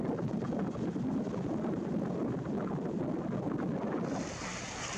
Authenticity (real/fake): real